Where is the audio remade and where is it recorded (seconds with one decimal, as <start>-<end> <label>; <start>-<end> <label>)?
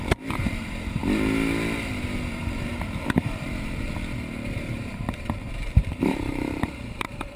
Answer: 0.0-1.0 remade; 1.0-2.3 recorded; 2.3-7.4 remade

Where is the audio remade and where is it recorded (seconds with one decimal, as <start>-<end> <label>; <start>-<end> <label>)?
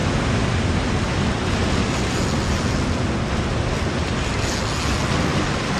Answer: 0.0-5.8 recorded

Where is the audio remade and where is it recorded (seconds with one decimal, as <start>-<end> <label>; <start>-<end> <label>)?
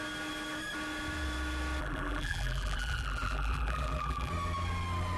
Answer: 0.0-1.8 recorded; 1.8-4.3 remade; 4.3-5.2 recorded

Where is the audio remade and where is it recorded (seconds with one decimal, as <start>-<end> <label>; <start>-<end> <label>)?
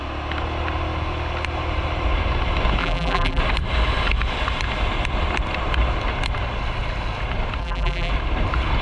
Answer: 0.0-2.8 recorded; 2.8-3.4 remade; 3.4-7.6 recorded; 7.6-8.1 remade; 8.1-8.8 recorded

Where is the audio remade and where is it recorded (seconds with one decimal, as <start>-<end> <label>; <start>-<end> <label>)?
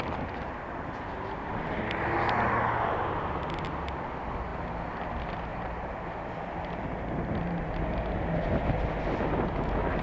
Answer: 0.0-5.5 recorded; 5.5-6.6 remade; 6.6-10.0 recorded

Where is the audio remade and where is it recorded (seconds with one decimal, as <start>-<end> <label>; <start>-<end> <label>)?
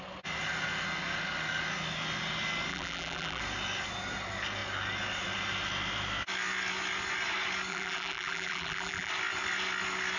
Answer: 0.0-2.7 recorded; 2.7-3.4 remade; 3.4-7.7 recorded; 7.7-9.1 remade; 9.1-10.2 recorded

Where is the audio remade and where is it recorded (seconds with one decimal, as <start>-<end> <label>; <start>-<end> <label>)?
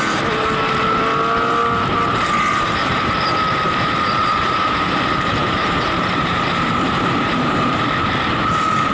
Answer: 0.0-2.5 recorded; 2.5-3.1 remade; 3.1-4.2 recorded; 4.2-7.8 remade; 7.8-8.9 recorded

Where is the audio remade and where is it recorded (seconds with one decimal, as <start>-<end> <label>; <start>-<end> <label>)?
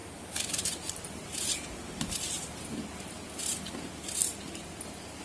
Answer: 0.0-3.1 remade; 3.1-5.2 recorded